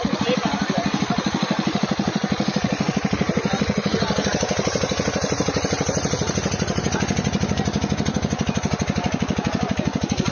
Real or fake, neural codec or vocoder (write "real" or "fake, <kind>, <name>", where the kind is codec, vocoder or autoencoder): real